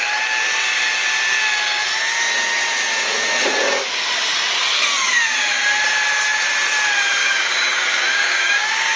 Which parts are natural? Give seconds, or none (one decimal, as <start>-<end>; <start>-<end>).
0.0-7.2